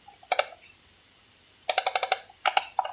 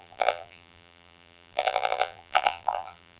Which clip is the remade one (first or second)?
second